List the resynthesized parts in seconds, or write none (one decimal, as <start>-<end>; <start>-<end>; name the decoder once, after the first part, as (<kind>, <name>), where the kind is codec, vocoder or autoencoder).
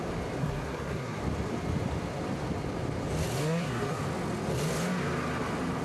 0.4-1.2 (codec, SNAC); 3.4-4.0